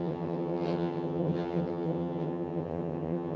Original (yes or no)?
no